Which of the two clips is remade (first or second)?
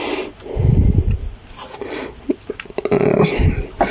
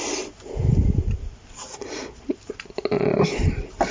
second